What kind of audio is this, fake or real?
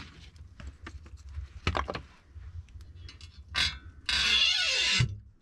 real